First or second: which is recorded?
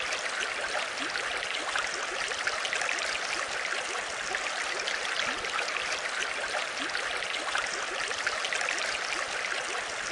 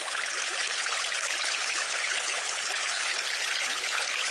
first